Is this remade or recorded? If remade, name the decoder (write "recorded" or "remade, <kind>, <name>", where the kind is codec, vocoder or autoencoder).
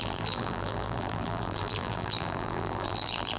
remade, vocoder, BigVGAN v2